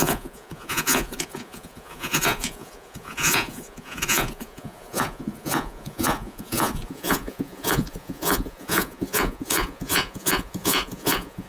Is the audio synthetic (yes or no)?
yes